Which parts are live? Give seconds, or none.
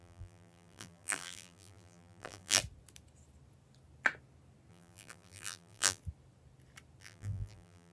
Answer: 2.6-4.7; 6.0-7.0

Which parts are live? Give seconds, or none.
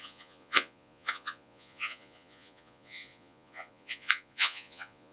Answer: none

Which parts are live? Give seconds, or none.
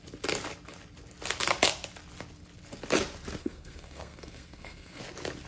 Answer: 0.0-3.4; 5.0-5.5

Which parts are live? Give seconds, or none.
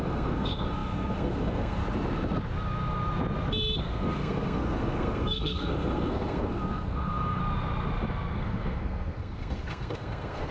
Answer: 1.8-3.8; 7.4-8.3